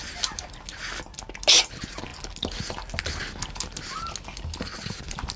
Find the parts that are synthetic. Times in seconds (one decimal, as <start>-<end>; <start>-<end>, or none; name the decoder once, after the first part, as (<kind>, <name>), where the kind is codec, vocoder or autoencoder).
none